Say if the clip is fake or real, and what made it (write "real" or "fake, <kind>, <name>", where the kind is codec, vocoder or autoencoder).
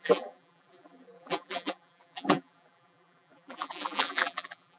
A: fake, vocoder, BigVGAN v2